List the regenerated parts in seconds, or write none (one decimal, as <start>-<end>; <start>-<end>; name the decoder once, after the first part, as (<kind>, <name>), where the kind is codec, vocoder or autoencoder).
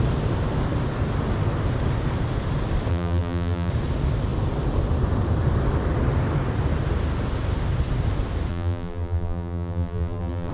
2.9-3.7 (vocoder, BigVGAN v2); 8.5-10.5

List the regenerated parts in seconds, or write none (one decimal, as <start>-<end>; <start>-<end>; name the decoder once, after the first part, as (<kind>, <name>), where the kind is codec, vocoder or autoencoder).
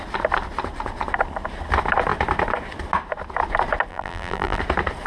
3.9-4.6 (vocoder, BigVGAN v2)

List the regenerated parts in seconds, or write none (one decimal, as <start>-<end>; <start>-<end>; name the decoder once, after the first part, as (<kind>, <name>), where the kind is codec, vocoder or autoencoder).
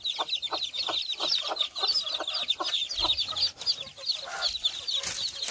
none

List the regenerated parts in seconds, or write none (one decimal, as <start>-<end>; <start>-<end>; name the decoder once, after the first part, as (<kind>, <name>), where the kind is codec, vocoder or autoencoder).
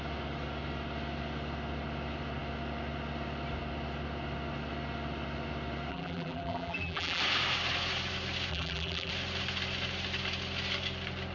5.9-7.2 (vocoder, BigVGAN v2); 8.5-9.1